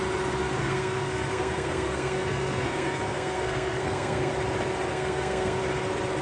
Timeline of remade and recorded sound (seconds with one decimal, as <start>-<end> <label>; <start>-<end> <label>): 0.0-0.6 recorded; 0.6-4.3 remade; 4.3-4.9 recorded; 4.9-5.6 remade; 5.6-6.2 recorded